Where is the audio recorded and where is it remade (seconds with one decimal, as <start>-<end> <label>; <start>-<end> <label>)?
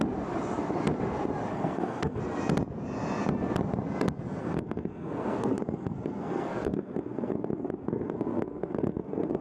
0.0-1.5 recorded; 1.5-2.2 remade; 2.2-4.4 recorded; 4.4-9.4 remade